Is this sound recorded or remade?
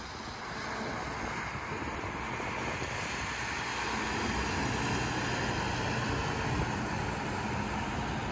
recorded